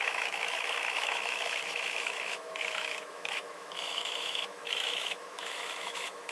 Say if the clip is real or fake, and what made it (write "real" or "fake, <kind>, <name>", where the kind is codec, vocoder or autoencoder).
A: fake, autoencoder, DAC-VAE